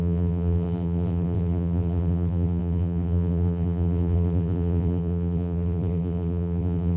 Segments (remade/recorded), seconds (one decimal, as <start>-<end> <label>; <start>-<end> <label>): 0.0-7.0 remade